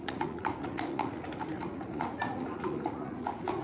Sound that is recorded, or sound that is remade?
remade